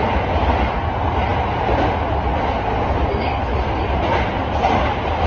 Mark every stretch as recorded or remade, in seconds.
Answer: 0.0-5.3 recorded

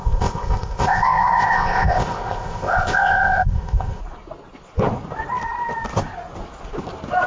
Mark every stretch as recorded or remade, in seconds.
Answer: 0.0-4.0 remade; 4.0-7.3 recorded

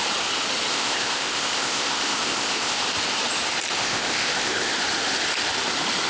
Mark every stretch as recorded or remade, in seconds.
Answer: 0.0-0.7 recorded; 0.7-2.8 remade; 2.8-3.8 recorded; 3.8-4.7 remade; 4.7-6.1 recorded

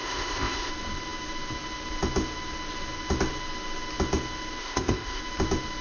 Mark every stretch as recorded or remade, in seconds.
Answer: 0.0-0.7 remade; 0.7-4.6 recorded; 4.6-5.2 remade; 5.2-5.8 recorded